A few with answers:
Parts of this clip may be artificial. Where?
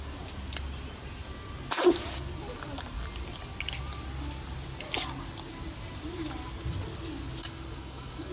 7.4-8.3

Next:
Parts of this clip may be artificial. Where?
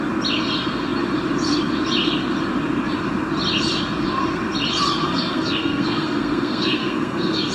5.0-7.5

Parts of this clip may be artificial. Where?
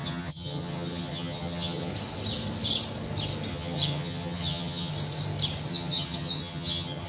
0.0-1.9; 3.5-4.9; 5.7-7.1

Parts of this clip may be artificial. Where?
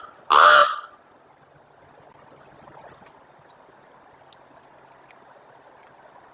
none